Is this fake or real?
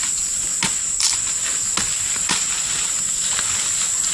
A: real